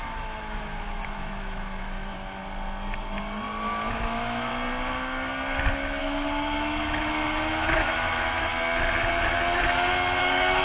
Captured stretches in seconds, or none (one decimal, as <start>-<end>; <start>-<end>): 2.4-3.9; 4.5-6.0; 8.5-10.2